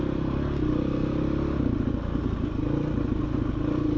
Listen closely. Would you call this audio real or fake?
real